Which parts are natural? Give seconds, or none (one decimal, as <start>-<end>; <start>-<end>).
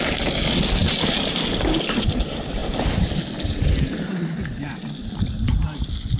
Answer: 0.0-0.8; 1.4-2.6; 3.1-6.2